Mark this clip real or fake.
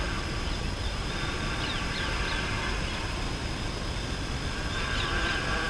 real